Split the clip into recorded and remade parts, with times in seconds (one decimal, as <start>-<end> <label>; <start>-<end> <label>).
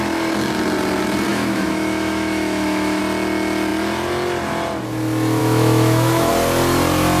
0.0-1.3 recorded; 1.3-3.0 remade; 3.0-5.4 recorded; 5.4-6.3 remade; 6.3-7.2 recorded